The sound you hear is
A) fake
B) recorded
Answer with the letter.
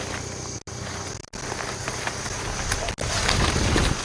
B